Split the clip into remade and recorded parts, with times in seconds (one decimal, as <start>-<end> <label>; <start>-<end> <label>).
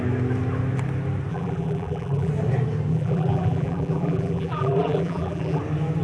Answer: 0.0-1.3 recorded; 1.3-2.3 remade; 2.3-2.9 recorded; 2.9-5.6 remade; 5.6-6.0 recorded